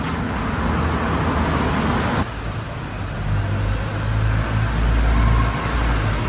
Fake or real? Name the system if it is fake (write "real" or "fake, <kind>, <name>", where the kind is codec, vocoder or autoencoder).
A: real